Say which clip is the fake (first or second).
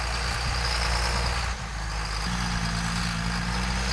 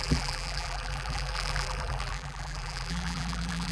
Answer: second